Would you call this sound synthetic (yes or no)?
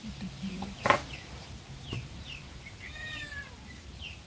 yes